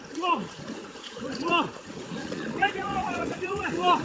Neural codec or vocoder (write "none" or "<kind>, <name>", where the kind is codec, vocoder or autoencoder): vocoder, Vocos